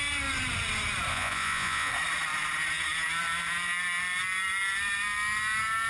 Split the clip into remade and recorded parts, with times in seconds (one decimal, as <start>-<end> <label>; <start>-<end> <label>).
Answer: 0.0-1.1 recorded; 1.1-1.9 remade; 1.9-5.9 recorded